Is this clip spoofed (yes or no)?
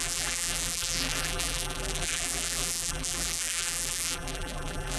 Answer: yes